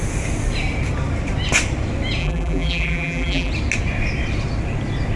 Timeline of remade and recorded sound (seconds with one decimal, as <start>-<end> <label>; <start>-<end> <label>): 0.0-2.2 recorded; 2.2-3.5 remade; 3.5-5.2 recorded